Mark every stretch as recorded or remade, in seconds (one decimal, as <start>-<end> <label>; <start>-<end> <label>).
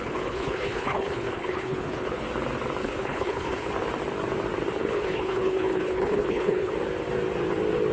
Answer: 0.0-2.2 remade; 2.2-2.8 recorded; 2.8-3.7 remade; 3.7-4.8 recorded; 4.8-6.7 remade; 6.7-7.9 recorded